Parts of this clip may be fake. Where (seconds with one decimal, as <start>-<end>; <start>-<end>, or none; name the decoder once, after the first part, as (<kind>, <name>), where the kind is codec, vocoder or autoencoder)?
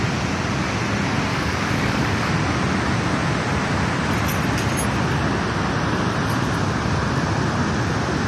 1.3-2.3 (codec, DAC)